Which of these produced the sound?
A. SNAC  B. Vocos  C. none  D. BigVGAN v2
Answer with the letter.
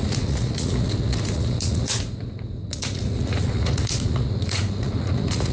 B